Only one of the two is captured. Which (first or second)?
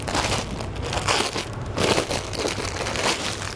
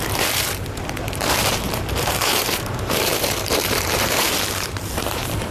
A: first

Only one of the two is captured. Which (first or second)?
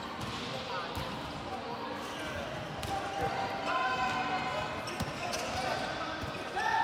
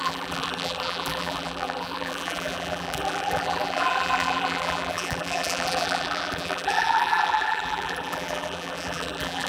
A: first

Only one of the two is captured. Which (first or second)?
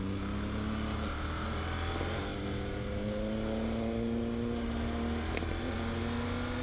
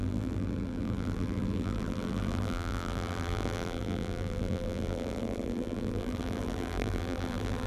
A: first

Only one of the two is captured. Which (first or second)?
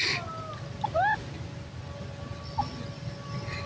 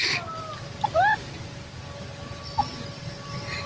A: first